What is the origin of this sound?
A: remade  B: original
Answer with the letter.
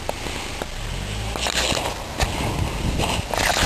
B